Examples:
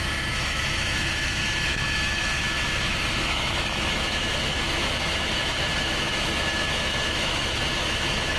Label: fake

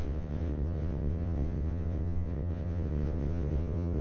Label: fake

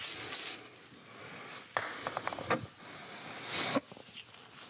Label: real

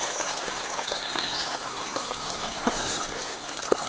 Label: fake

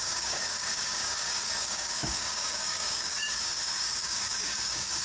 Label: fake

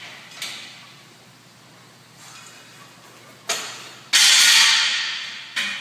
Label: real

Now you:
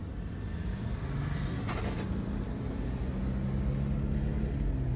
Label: real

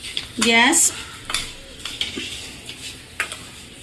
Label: real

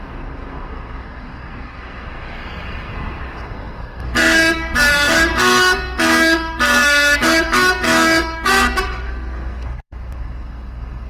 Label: fake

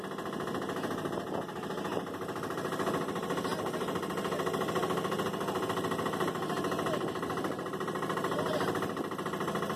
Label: real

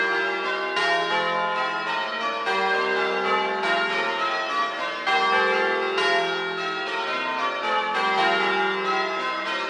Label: real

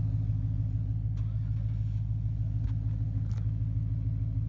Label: real